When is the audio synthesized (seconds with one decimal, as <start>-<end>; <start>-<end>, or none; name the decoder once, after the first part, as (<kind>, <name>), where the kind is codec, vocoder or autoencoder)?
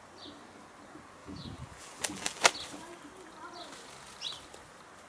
1.2-2.4 (vocoder, BigVGAN v2)